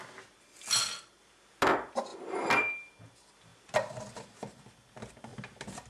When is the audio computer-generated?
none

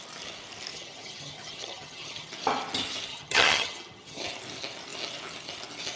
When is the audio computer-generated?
0.7-2.3 (vocoder, HiFi-GAN); 3.1-4.2

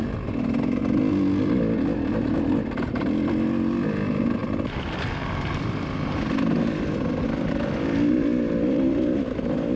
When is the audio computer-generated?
none

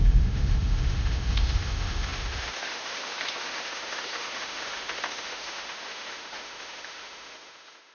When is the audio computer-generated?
0.0-7.9 (autoencoder, DAC-VAE)

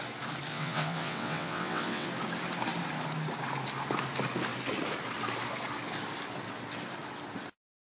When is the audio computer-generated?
0.5-2.1 (vocoder, WaveNeXt)

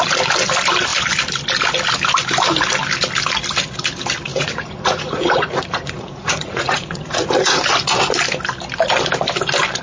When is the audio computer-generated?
4.3-7.6 (vocoder, Vocos)

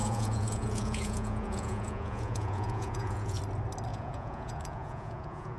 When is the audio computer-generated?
0.0-3.4 (vocoder, Vocos); 3.9-5.6